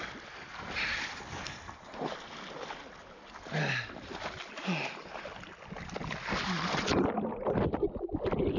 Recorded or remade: recorded